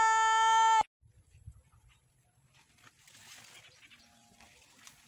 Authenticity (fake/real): real